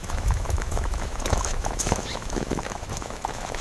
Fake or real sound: fake